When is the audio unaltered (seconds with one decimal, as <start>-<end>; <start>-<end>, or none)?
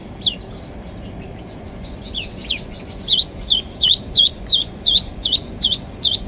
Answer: 0.0-1.4